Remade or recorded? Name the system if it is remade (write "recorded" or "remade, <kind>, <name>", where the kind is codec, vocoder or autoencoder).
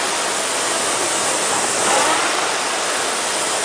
recorded